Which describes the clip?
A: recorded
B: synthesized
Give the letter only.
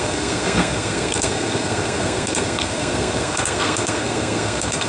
B